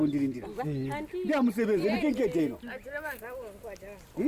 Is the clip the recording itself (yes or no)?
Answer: yes